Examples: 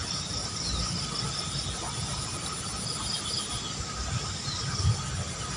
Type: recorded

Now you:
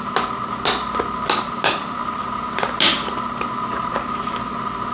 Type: recorded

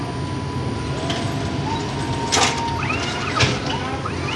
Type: recorded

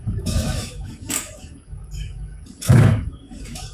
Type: remade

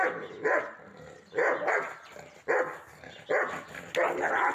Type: recorded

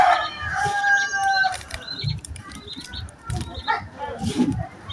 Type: remade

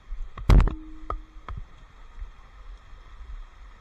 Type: recorded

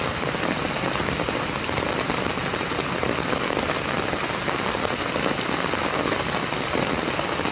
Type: recorded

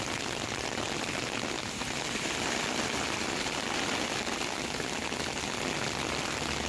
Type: recorded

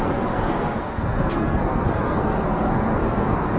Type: remade